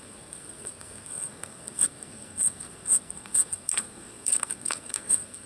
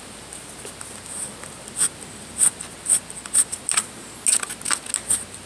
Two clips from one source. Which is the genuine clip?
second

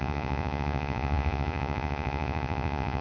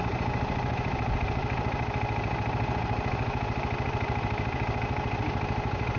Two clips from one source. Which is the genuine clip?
second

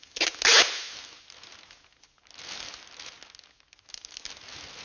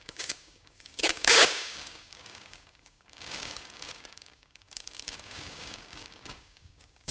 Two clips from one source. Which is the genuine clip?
first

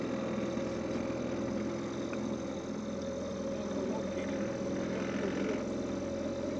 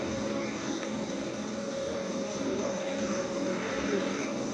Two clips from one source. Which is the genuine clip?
first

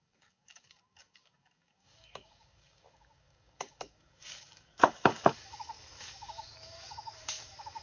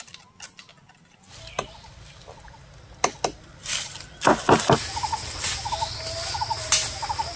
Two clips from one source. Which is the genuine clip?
second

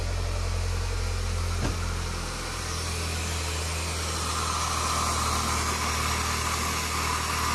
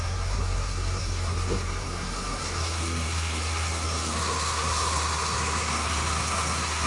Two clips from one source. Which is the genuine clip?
first